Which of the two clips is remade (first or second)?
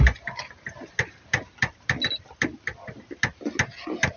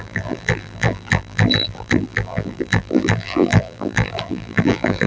second